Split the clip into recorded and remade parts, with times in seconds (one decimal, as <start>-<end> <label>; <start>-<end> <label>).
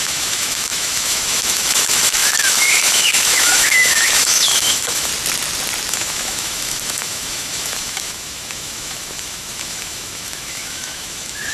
0.0-5.1 remade; 5.1-5.9 recorded; 5.9-11.5 remade